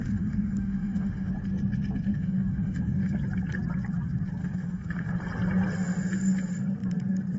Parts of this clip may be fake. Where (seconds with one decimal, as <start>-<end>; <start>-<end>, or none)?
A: 0.0-1.3; 2.1-3.1; 4.4-5.1